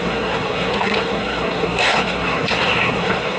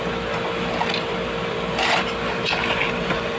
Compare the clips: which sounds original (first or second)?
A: second